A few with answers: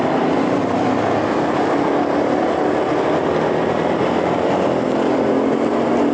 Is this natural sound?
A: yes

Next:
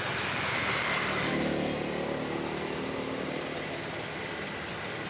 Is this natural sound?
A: yes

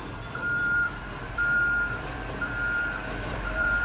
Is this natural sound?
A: no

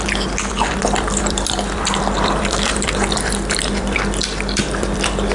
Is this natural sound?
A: no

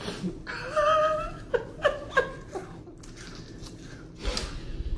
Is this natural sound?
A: yes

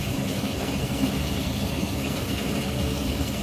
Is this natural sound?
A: no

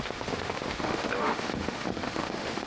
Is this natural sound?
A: no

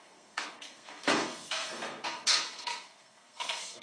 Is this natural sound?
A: no